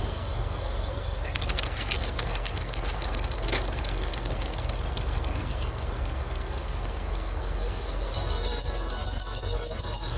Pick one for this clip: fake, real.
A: fake